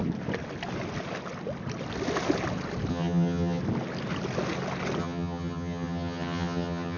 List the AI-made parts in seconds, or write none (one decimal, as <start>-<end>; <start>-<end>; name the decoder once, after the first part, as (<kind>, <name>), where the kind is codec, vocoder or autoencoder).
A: 2.9-3.6 (vocoder, HiFi-GAN); 5.0-7.0